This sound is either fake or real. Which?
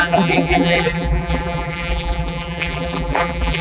fake